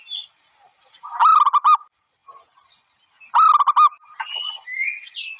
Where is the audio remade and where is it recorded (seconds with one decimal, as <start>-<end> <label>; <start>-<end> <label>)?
0.0-5.4 recorded